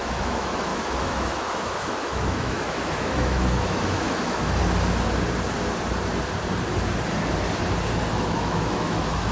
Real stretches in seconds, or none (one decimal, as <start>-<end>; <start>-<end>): 4.6-8.1